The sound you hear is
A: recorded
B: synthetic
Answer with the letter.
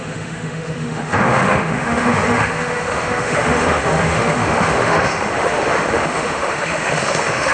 B